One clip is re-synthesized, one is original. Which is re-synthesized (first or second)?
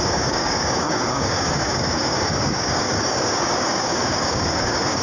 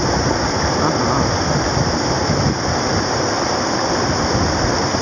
first